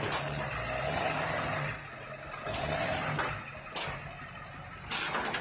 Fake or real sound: real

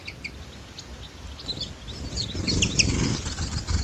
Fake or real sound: real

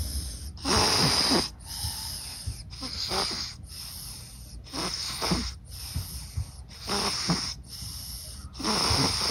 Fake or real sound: real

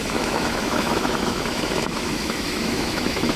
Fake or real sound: fake